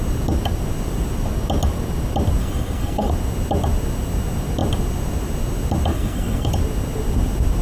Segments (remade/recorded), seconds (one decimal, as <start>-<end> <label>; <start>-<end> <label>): 0.0-2.4 recorded; 2.4-3.1 remade; 3.1-5.9 recorded; 5.9-6.5 remade; 6.5-7.6 recorded